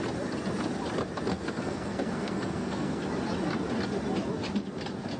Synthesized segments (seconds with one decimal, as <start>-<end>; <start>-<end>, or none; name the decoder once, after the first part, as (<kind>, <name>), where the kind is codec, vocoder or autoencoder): 1.3-3.0 (codec, SNAC)